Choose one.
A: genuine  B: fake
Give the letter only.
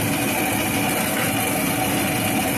A